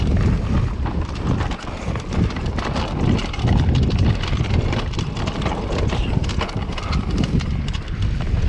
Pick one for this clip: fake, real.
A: real